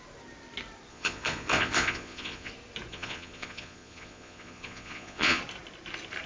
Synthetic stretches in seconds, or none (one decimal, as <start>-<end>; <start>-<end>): 0.9-2.5; 2.9-5.4